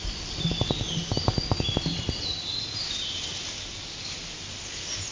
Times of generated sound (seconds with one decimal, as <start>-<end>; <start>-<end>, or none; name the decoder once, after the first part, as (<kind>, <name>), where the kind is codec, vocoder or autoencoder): 1.9-2.9 (vocoder, BigVGAN v2)